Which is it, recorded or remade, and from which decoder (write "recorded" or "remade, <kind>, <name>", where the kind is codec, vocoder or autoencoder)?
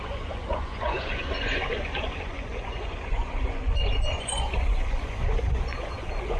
remade, vocoder, Vocos